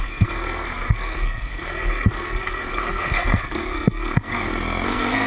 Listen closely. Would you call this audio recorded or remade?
remade